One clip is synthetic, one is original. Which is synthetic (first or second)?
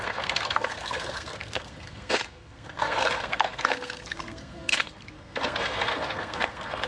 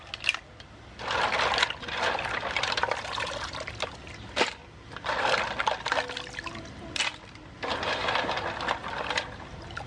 first